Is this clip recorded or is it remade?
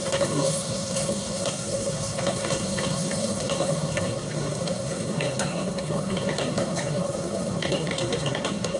remade